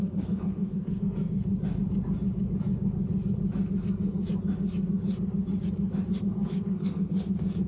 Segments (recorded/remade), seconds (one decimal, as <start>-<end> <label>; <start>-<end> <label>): 0.0-1.5 remade; 1.5-6.1 recorded; 6.1-7.7 remade